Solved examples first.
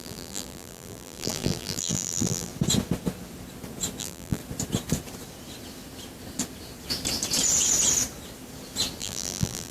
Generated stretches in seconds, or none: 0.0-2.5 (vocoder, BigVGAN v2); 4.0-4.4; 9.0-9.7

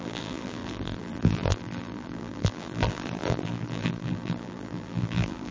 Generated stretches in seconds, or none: 0.0-5.5 (vocoder, BigVGAN v2)